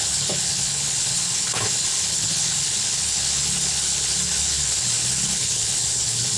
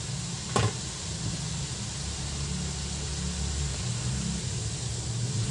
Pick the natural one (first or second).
second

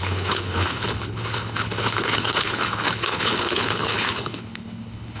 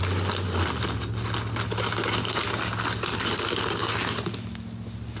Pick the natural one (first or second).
second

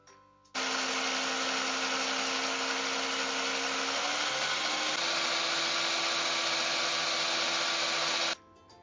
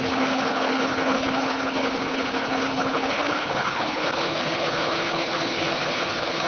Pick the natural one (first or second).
first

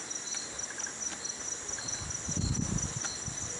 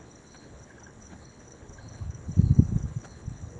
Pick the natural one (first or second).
first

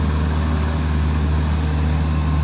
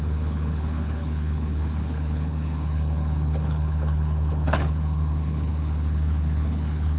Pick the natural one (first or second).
first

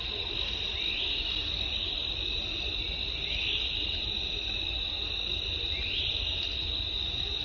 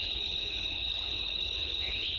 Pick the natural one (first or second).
first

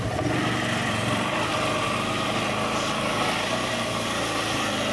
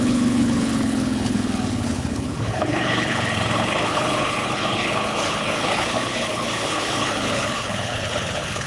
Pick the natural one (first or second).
first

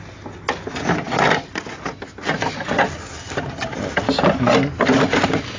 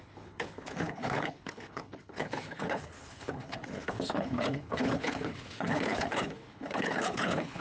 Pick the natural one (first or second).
first